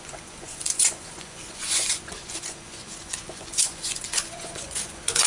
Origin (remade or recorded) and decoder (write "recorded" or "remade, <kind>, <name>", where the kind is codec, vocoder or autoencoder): remade, vocoder, Vocos